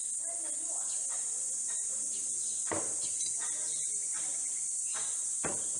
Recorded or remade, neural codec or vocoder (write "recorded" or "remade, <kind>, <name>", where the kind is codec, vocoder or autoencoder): remade, vocoder, BigVGAN v2